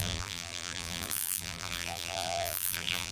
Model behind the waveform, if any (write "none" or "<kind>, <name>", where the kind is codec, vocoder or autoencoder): vocoder, BigVGAN v2